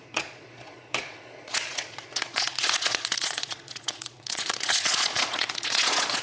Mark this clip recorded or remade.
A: remade